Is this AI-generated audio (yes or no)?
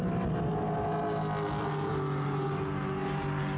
no